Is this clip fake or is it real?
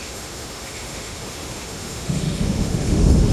fake